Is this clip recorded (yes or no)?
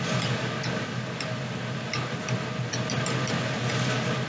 yes